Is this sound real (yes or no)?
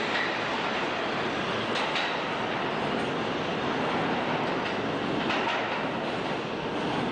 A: yes